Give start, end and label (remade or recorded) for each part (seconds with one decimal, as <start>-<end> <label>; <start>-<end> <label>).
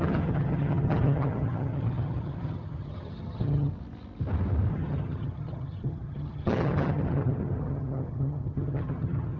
0.0-3.7 remade; 3.7-4.7 recorded; 4.7-9.4 remade